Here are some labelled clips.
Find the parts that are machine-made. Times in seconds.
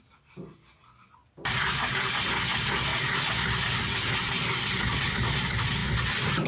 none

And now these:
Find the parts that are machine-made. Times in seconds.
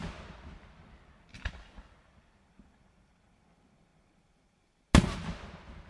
none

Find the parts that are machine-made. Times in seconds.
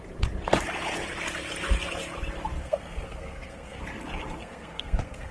2.6-3.8 (codec, SNAC); 4.4-5.3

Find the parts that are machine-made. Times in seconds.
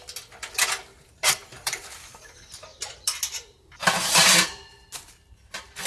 0.9-2.2 (vocoder, BigVGAN v2); 2.7-5.1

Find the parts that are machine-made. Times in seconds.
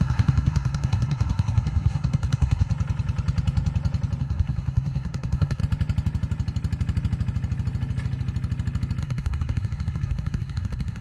0.0-2.7 (codec, SNAC); 4.2-5.6; 9.0-11.0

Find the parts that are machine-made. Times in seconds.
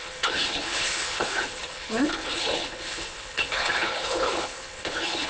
0.0-5.3 (codec, HILCodec)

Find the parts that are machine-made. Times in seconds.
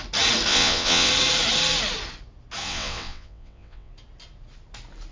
0.5-1.1 (vocoder, WaveNeXt); 2.6-3.9